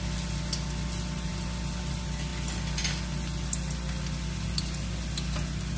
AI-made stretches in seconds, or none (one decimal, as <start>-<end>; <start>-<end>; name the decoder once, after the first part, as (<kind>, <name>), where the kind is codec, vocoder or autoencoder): none

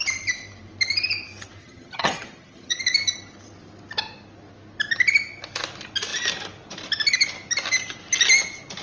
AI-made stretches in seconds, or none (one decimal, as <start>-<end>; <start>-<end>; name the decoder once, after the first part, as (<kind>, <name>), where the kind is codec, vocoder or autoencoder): 1.6-2.8 (vocoder, HiFi-GAN)

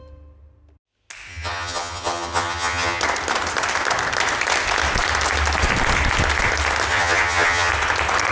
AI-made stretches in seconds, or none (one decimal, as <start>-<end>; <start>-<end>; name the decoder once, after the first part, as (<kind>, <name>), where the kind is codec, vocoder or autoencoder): 1.3-3.0 (vocoder, HiFi-GAN); 6.9-7.7

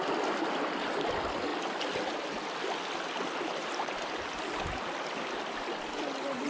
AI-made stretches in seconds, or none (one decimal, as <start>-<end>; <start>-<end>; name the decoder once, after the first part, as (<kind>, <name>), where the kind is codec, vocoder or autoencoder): none

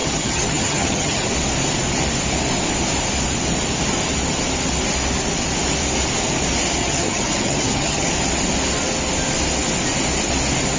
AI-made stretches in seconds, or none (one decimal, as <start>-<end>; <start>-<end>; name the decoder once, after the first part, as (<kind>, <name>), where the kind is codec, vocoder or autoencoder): 0.0-1.3 (vocoder, HiFi-GAN); 6.8-8.1

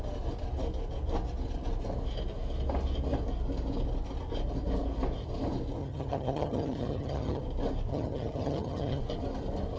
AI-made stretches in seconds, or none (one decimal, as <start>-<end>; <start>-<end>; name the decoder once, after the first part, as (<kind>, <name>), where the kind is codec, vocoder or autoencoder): 5.8-7.4 (vocoder, HiFi-GAN); 7.9-9.0

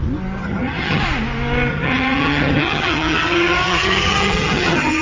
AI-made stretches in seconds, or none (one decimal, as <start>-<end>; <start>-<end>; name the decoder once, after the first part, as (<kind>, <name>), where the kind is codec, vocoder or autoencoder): 0.4-1.0 (vocoder, HiFi-GAN); 1.7-5.0